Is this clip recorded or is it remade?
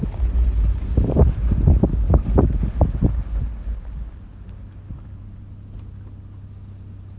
recorded